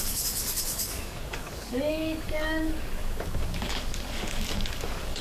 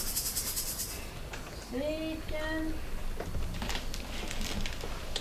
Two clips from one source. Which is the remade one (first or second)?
first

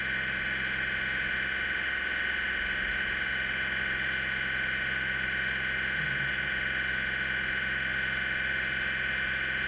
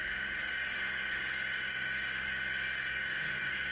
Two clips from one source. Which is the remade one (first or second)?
second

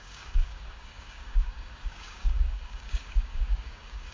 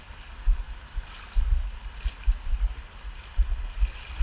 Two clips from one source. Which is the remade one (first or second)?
first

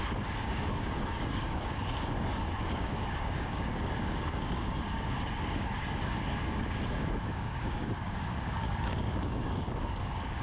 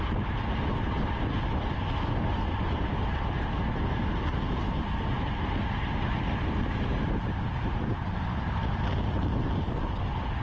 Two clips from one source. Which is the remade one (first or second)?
first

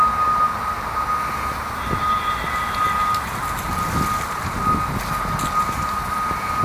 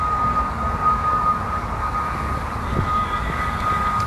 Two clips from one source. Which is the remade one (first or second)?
second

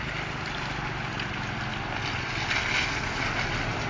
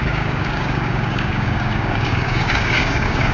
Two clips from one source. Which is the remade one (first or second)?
second